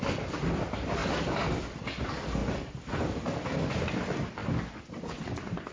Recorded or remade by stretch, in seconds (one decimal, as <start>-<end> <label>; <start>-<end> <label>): 0.0-5.7 recorded